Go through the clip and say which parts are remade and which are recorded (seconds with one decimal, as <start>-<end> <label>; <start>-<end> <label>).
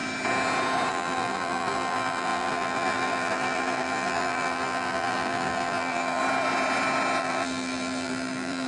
0.0-0.9 recorded; 0.9-6.2 remade; 6.2-7.2 recorded; 7.2-8.7 remade